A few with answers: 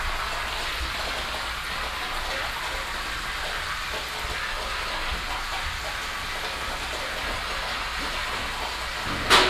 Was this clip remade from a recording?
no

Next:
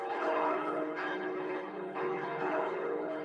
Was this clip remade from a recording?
yes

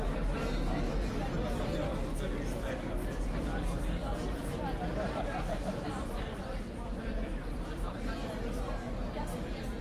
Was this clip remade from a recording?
no